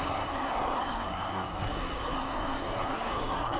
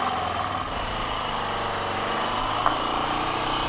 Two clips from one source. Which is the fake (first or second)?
first